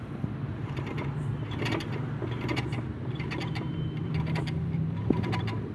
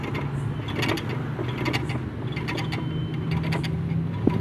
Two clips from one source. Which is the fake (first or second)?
first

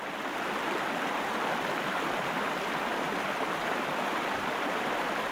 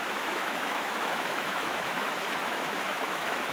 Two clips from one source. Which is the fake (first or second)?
second